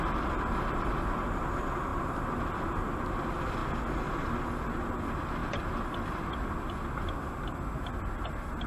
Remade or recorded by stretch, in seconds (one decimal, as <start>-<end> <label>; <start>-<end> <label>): 0.0-5.4 recorded; 5.4-6.6 remade; 6.6-8.7 recorded